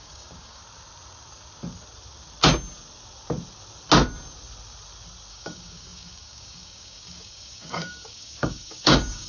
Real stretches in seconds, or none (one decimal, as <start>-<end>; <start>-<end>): 0.6-5.3